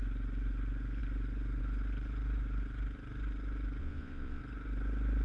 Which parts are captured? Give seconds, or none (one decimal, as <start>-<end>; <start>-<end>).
0.0-3.8; 4.4-5.2